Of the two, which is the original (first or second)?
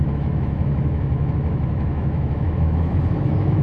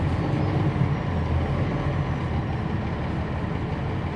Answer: second